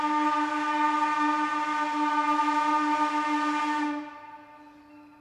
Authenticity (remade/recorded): recorded